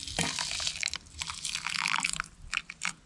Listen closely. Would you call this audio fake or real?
real